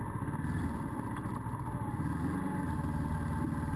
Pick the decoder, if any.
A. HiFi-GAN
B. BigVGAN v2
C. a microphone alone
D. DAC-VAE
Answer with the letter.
C